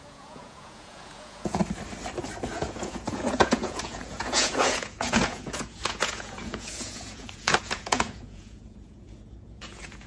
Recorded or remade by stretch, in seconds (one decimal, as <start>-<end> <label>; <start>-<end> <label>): 0.0-1.6 remade; 1.6-2.5 recorded; 2.5-10.1 remade